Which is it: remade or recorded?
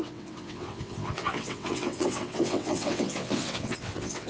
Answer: remade